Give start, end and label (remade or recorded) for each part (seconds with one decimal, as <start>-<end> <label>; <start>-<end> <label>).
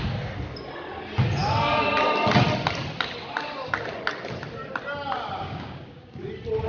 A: 0.0-5.4 recorded; 5.4-6.2 remade; 6.2-6.7 recorded